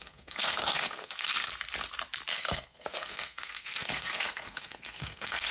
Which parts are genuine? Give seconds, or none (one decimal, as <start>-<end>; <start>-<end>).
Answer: 1.5-2.3